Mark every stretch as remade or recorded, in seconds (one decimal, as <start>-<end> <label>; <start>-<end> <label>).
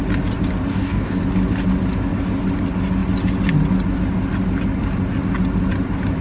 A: 0.0-0.7 recorded; 0.7-1.2 remade; 1.2-6.2 recorded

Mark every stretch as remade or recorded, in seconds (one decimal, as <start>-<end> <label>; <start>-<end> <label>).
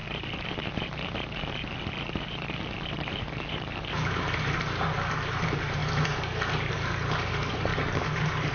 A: 0.0-5.8 remade; 5.8-6.7 recorded; 6.7-8.5 remade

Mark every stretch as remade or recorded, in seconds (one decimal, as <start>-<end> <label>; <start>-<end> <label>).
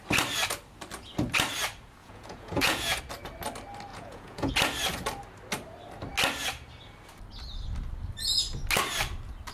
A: 0.0-2.0 recorded; 2.0-3.0 remade; 3.0-3.9 recorded; 3.9-4.5 remade; 4.5-9.5 recorded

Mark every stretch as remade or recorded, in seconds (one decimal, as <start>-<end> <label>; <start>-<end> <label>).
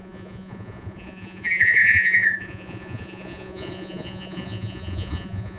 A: 0.0-5.6 remade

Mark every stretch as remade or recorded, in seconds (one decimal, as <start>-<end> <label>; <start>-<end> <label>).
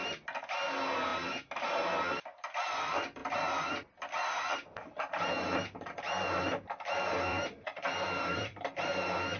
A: 0.0-7.3 recorded; 7.3-8.7 remade; 8.7-9.4 recorded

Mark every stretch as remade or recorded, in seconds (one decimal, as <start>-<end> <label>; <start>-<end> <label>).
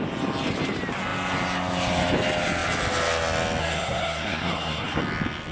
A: 0.0-3.6 recorded; 3.6-5.0 remade; 5.0-5.5 recorded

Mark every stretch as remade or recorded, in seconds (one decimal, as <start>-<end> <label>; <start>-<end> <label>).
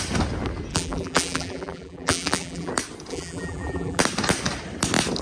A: 0.0-0.7 recorded; 0.7-2.7 remade; 2.7-3.1 recorded; 3.1-4.0 remade; 4.0-5.2 recorded